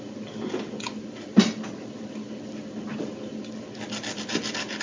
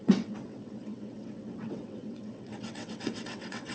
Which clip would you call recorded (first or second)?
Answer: first